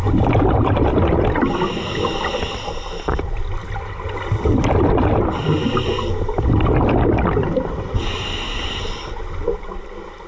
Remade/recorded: recorded